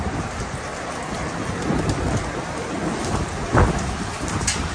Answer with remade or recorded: recorded